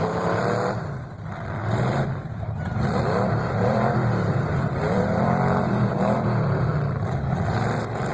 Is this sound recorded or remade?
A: remade